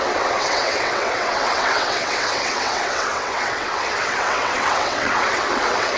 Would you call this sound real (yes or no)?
no